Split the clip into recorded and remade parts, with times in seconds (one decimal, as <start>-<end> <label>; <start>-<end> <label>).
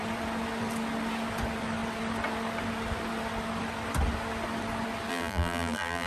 0.0-5.1 recorded; 5.1-6.1 remade